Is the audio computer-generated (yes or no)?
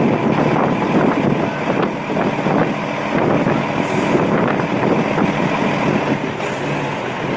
no